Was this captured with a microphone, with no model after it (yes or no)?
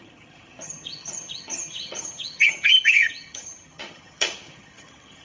no